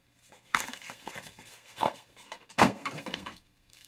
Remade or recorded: remade